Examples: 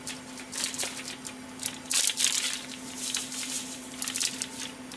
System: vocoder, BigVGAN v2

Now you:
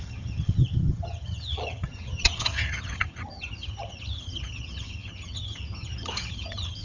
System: vocoder, HiFi-GAN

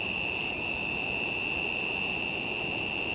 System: vocoder, BigVGAN v2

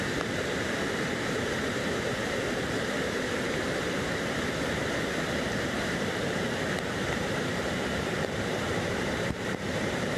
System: vocoder, BigVGAN v2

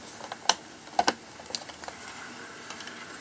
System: none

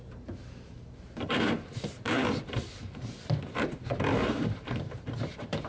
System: vocoder, BigVGAN v2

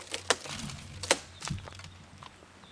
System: none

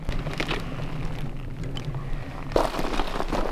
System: none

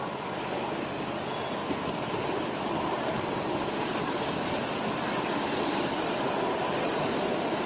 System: none